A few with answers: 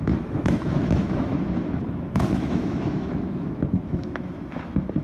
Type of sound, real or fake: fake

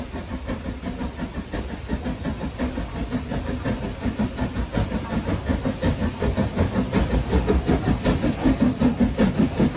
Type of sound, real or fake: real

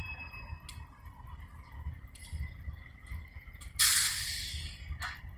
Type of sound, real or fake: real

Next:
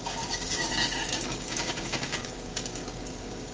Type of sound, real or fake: fake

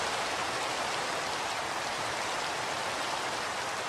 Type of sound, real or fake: real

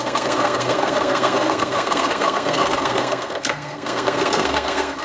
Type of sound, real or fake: fake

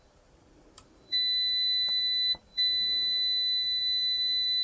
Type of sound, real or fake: fake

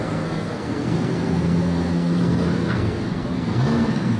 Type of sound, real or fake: fake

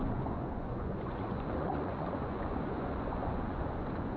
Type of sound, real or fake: fake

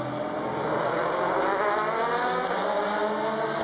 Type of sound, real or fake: real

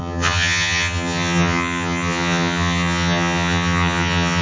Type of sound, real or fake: fake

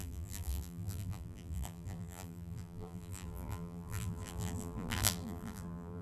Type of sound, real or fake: fake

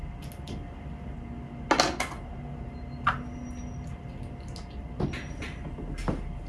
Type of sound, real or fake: real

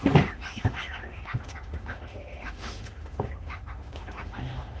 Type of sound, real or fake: fake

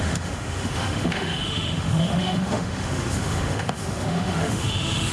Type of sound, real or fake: fake